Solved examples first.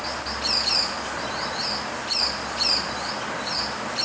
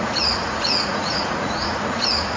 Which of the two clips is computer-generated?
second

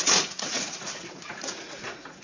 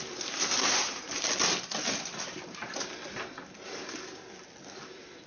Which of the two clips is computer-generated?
first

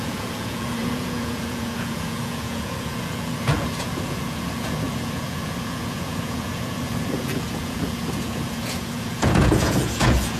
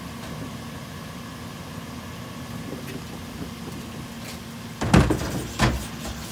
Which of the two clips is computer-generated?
first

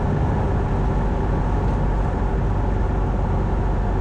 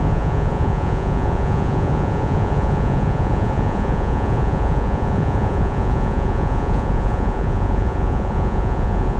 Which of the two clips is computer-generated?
second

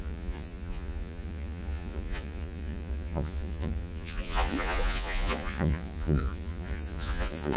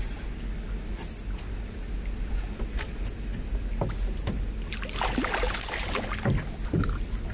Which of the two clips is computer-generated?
first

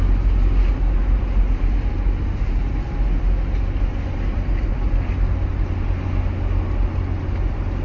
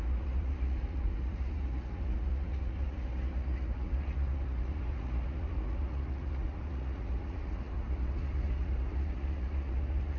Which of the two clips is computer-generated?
second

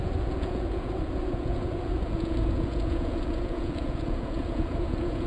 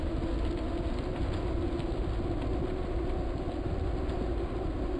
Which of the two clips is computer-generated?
first